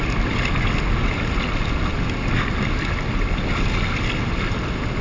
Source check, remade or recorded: recorded